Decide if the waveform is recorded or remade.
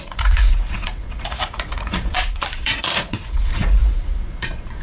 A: remade